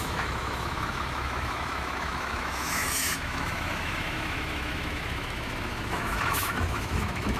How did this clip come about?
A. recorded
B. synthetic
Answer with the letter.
B